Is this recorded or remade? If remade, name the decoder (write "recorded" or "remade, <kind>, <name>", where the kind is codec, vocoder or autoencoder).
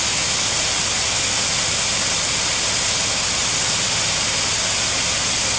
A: recorded